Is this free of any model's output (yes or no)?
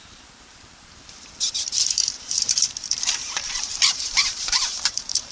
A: no